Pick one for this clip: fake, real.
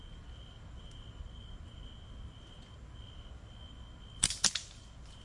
real